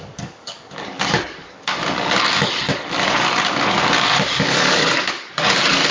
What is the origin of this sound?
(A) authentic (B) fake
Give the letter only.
B